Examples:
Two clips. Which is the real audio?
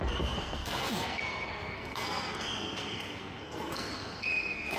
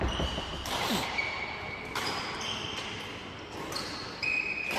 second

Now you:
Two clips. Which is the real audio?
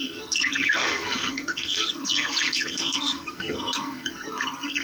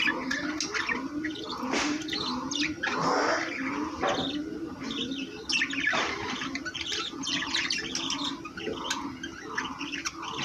second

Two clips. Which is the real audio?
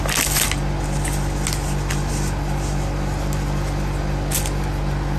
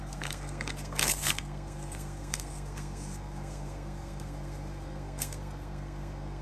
first